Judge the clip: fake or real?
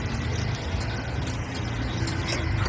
real